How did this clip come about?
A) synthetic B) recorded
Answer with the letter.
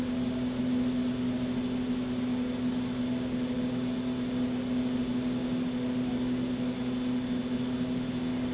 B